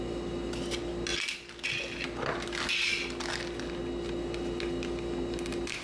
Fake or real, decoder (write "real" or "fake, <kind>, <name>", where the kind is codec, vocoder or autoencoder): real